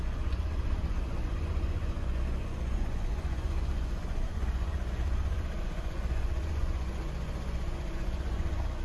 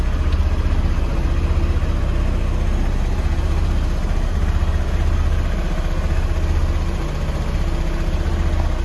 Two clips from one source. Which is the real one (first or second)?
second